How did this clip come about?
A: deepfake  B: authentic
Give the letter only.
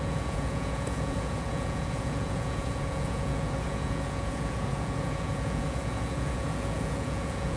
A